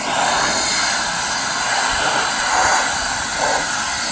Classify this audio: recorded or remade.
recorded